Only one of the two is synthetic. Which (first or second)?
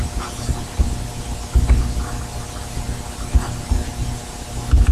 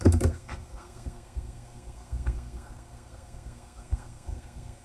second